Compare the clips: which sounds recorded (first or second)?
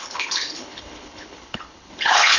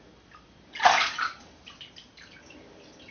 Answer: second